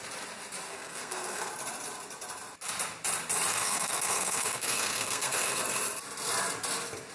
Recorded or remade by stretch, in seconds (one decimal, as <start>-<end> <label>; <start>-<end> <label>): 0.0-0.7 recorded; 0.7-1.5 remade; 1.5-3.5 recorded; 3.5-5.6 remade; 5.6-7.1 recorded